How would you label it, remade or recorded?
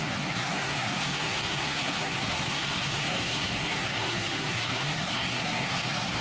remade